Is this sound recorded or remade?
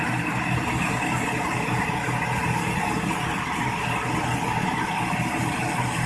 recorded